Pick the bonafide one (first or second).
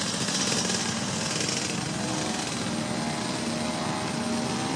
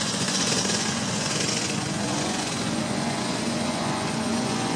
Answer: first